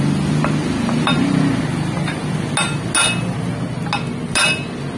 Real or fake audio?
real